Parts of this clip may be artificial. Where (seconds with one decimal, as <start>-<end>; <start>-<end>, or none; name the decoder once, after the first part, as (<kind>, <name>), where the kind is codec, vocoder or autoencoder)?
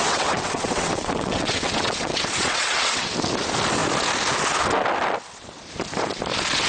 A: 0.0-3.1 (vocoder, WaveNeXt)